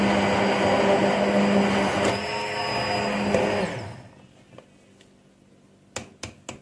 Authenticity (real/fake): real